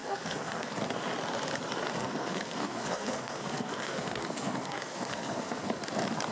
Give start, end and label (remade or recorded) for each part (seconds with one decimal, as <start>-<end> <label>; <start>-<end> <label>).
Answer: 0.0-0.7 remade; 0.7-2.0 recorded; 2.0-5.8 remade; 5.8-6.3 recorded